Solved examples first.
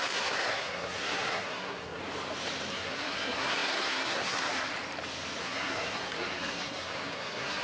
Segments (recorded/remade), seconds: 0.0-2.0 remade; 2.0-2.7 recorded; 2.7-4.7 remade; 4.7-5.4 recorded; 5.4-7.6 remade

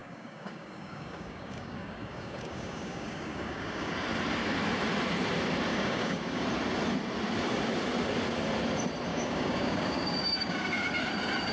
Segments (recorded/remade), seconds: 0.0-3.9 remade; 3.9-5.7 recorded; 5.7-6.4 remade; 6.4-9.1 recorded; 9.1-11.0 remade; 11.0-11.5 recorded

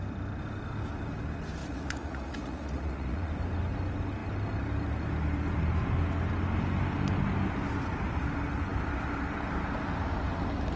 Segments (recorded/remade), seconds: 0.0-1.6 recorded; 1.6-3.3 remade; 3.3-10.8 recorded

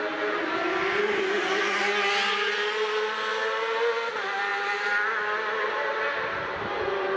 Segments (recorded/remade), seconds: 0.0-7.2 recorded

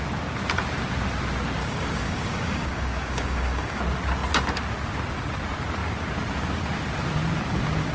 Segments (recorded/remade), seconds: 0.0-1.6 recorded; 1.6-3.8 remade; 3.8-7.9 recorded